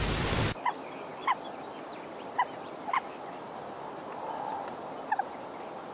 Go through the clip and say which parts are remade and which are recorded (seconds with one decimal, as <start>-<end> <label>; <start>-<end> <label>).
0.0-5.9 recorded